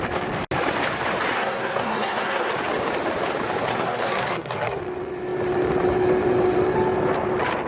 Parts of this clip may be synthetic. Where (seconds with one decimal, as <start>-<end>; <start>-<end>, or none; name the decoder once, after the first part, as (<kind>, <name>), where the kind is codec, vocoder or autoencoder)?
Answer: 1.3-2.5 (codec, SNAC); 3.7-4.8